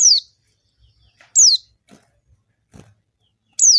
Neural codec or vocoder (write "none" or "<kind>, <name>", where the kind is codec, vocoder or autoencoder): none